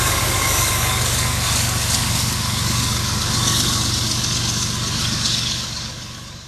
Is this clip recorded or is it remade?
remade